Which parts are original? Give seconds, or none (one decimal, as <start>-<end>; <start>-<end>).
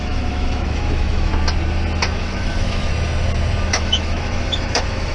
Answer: 1.3-2.2; 2.9-3.7